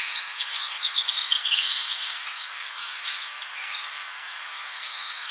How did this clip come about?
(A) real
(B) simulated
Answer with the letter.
B